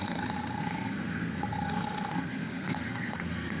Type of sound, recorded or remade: remade